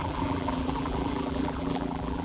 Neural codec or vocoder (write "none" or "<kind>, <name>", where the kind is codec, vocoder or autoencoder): vocoder, BigVGAN v2